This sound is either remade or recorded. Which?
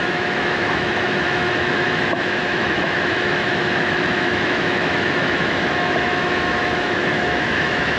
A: remade